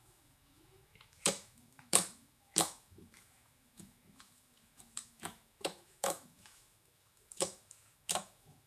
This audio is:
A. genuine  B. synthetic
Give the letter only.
B